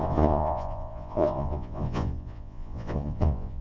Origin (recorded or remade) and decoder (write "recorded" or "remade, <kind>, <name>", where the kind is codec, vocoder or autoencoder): remade, vocoder, Vocos